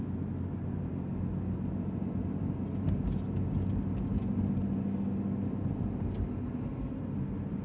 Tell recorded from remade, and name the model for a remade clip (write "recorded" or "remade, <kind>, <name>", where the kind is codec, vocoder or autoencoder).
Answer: recorded